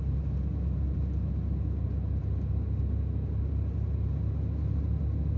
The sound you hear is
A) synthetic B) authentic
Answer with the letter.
B